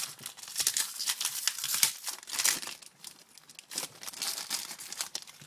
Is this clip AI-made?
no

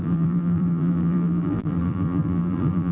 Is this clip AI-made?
yes